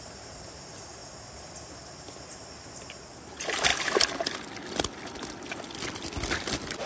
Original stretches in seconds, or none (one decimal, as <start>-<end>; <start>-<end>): 1.0-3.1; 3.7-6.9